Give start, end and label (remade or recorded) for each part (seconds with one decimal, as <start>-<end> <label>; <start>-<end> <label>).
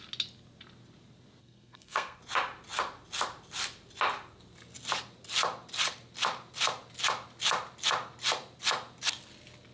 0.0-1.4 recorded; 1.4-2.2 remade; 2.2-9.7 recorded